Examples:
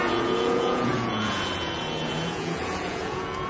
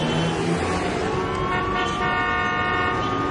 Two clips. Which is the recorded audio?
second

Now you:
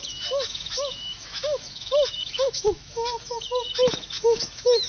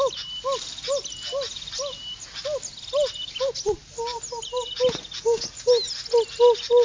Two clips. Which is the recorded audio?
second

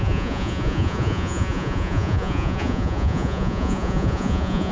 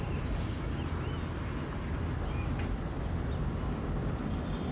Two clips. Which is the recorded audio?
second